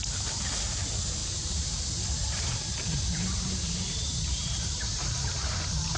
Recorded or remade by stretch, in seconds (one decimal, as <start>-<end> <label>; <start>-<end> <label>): 0.0-1.2 recorded; 1.2-1.8 remade; 1.8-2.2 recorded; 2.2-6.0 remade